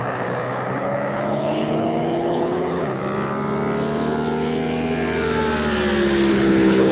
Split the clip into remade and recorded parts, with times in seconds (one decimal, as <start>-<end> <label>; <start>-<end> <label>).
0.0-3.0 remade; 3.0-6.3 recorded; 6.3-6.9 remade